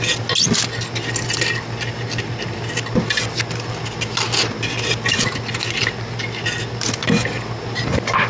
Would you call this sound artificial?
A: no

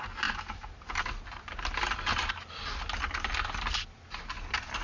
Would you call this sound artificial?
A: no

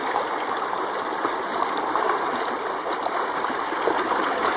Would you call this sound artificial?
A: no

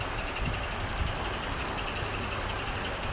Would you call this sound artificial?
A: no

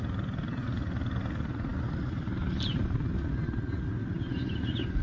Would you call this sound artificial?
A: no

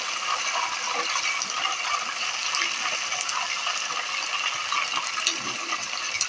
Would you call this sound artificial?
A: no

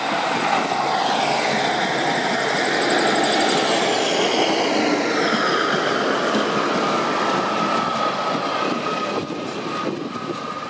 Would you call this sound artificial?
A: no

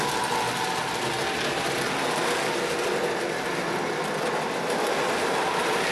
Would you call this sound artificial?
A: no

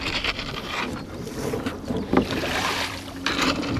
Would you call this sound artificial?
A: yes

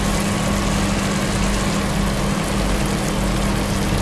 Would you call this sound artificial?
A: no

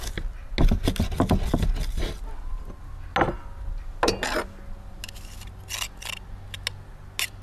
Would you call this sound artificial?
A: no